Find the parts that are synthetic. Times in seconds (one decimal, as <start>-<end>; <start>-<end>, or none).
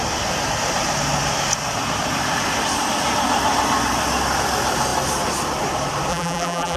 6.1-6.8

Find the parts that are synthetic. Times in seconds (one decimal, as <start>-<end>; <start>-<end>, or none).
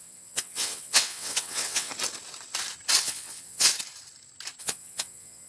0.0-1.9; 3.0-3.7; 4.6-5.5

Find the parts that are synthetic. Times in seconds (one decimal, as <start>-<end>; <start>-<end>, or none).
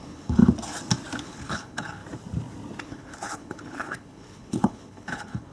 0.0-0.4; 1.2-2.0; 2.8-5.5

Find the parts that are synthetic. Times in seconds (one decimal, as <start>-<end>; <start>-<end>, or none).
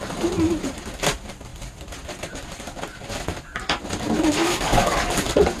4.4-5.0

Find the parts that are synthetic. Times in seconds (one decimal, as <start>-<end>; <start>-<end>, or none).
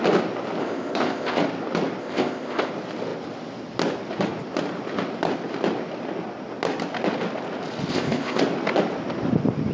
0.6-1.4; 2.0-2.7; 7.9-8.4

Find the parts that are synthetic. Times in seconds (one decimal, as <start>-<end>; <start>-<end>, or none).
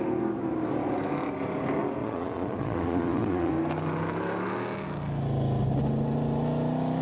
2.0-3.5